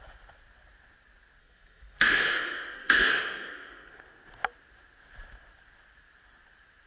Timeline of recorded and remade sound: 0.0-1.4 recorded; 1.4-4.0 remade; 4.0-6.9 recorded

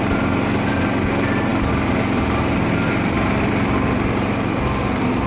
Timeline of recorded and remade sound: 0.0-5.3 recorded

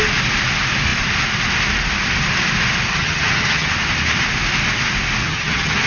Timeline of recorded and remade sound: 0.0-2.9 recorded; 2.9-3.7 remade; 3.7-5.2 recorded; 5.2-5.9 remade

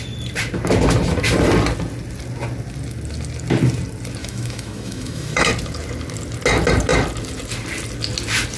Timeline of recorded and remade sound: 0.0-4.2 recorded; 4.2-5.5 remade; 5.5-8.6 recorded

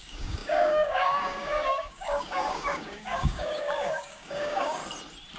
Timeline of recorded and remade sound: 0.0-4.8 remade; 4.8-5.4 recorded

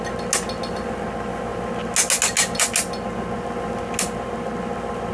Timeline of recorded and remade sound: 0.0-5.1 recorded